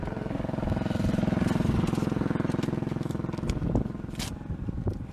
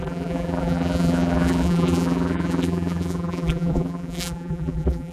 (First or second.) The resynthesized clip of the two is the second